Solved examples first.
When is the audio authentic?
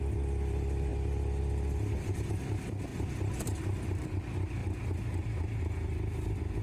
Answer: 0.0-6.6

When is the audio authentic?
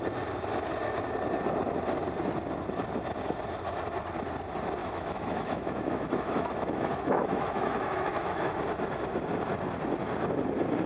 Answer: 0.0-4.8; 8.6-10.9